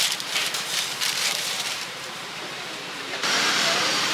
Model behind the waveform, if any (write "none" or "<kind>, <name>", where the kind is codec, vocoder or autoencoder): vocoder, BigVGAN v2